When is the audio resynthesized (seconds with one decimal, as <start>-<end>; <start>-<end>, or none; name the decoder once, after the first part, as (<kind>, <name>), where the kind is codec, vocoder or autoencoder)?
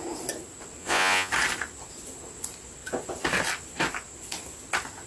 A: 0.8-1.3 (vocoder, Vocos)